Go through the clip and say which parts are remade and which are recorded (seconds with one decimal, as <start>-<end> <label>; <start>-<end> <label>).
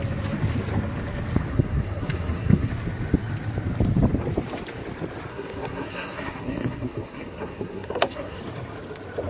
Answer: 0.0-1.5 recorded; 1.5-2.7 remade; 2.7-5.3 recorded; 5.3-8.4 remade; 8.4-9.3 recorded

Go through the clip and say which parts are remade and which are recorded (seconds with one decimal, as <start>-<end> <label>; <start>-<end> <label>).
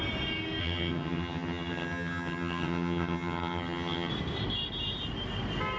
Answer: 0.0-0.6 recorded; 0.6-4.1 remade; 4.1-5.8 recorded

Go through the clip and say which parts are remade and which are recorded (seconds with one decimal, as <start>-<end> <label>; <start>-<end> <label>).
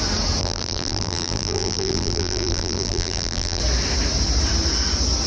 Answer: 0.0-0.4 recorded; 0.4-3.6 remade; 3.6-5.3 recorded